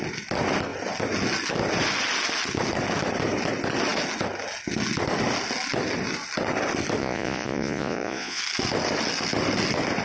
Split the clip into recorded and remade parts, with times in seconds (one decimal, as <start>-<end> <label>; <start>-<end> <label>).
0.0-7.0 recorded; 7.0-8.4 remade; 8.4-10.0 recorded